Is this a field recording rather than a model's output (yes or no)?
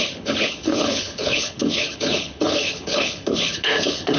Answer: no